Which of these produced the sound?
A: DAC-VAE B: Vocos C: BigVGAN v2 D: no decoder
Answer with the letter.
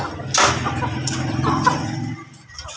D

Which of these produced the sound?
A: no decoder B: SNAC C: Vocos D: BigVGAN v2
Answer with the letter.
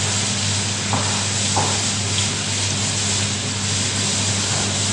A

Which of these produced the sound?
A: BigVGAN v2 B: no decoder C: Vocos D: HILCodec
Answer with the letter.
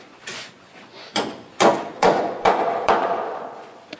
C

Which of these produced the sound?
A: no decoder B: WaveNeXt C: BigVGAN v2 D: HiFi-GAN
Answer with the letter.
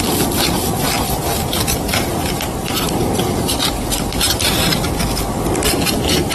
A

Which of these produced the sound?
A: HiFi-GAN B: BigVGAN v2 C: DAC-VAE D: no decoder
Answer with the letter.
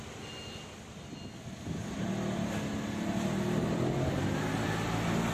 D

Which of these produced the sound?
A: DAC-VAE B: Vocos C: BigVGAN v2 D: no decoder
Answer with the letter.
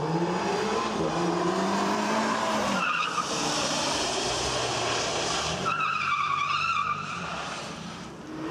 C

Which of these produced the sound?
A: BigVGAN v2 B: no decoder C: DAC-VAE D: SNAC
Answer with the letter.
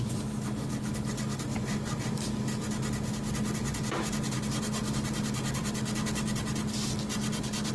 B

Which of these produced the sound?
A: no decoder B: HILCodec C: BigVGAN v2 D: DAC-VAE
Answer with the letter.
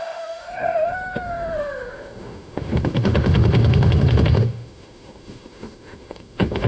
D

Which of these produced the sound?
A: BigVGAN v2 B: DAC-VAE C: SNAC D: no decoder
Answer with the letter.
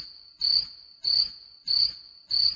D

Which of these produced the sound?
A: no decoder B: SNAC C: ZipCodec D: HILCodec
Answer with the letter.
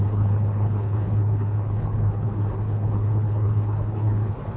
D